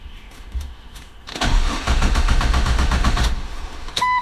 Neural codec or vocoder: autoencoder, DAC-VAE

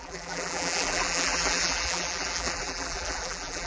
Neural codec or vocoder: vocoder, BigVGAN v2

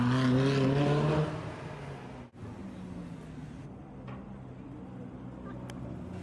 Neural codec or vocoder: none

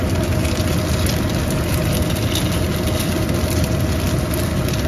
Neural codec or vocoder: none